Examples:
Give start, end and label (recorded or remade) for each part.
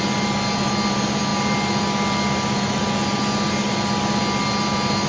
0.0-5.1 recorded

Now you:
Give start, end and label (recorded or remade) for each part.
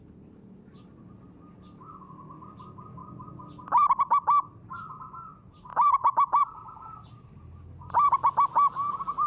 0.0-5.7 recorded; 5.7-6.4 remade; 6.4-9.3 recorded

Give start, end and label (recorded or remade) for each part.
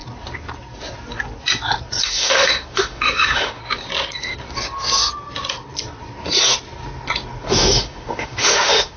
0.0-2.0 recorded; 2.0-3.6 remade; 3.6-7.5 recorded; 7.5-9.0 remade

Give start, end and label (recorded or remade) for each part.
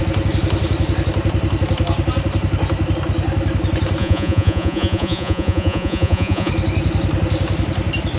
0.0-4.0 recorded; 4.0-6.5 remade; 6.5-8.2 recorded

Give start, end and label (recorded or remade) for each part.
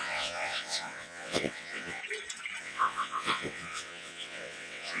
0.0-2.0 remade; 2.0-2.6 recorded; 2.6-5.0 remade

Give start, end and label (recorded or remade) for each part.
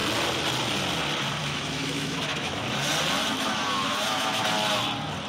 0.0-1.4 recorded; 1.4-2.6 remade; 2.6-3.2 recorded; 3.2-4.4 remade; 4.4-5.3 recorded